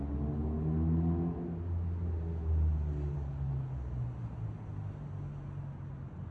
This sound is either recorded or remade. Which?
recorded